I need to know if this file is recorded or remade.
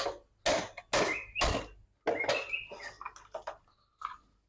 recorded